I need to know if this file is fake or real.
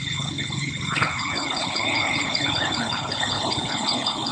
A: fake